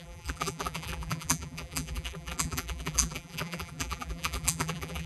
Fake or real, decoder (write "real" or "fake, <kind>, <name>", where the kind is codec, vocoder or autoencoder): fake, vocoder, BigVGAN v2